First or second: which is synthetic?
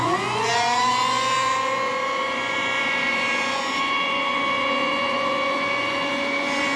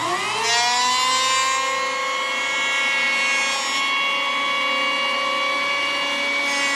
first